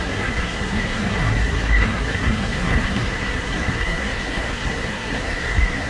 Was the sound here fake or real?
fake